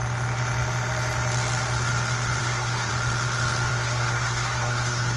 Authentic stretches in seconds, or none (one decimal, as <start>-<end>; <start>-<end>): 0.0-2.4; 2.9-3.7